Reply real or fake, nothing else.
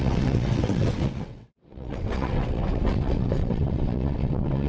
fake